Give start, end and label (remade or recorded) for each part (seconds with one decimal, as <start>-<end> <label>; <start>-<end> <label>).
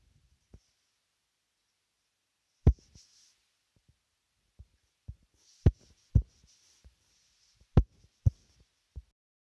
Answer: 0.0-9.5 recorded